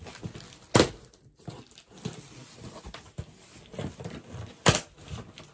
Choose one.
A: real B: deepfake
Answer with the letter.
A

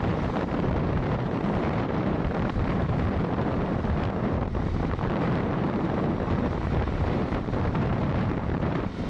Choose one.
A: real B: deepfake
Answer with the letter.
B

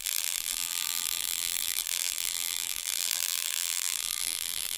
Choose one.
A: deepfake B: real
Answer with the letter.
A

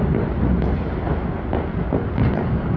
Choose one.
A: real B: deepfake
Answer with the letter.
A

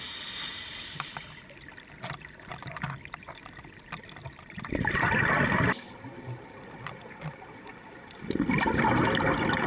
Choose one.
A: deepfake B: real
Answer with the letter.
B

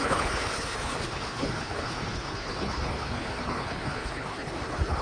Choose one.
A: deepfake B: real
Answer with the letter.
A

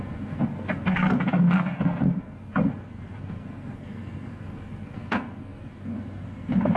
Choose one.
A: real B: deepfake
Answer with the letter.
B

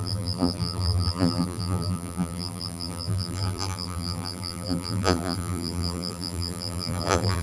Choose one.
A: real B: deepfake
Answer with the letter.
B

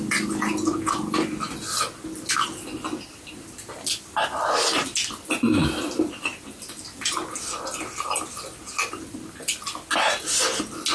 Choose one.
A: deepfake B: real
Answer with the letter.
B